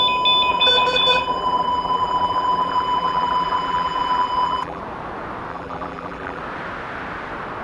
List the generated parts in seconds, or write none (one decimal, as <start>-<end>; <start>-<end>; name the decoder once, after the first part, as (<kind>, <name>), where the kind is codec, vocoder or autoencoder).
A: 0.5-4.8 (vocoder, BigVGAN v2); 5.5-6.4